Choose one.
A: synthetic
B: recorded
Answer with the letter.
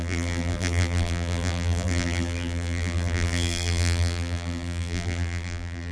A